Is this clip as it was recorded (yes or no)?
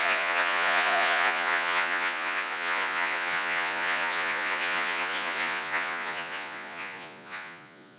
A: no